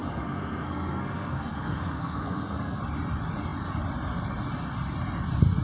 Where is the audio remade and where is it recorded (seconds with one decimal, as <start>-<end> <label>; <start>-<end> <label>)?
0.0-2.8 remade; 2.8-5.6 recorded